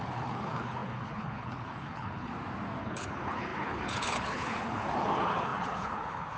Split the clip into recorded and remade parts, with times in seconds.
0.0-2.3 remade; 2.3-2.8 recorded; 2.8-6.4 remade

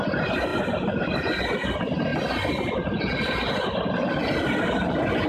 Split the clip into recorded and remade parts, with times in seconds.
0.0-5.3 recorded

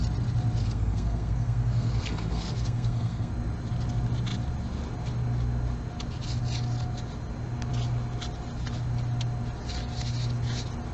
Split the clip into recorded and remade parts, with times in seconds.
0.0-0.6 recorded; 0.6-3.3 remade; 3.3-10.9 recorded

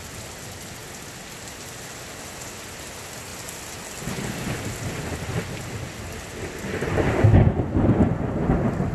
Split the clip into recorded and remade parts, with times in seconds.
0.0-8.9 recorded